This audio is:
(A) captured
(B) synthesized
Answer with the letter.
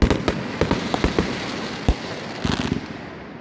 A